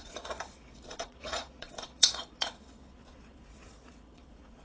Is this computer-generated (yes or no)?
yes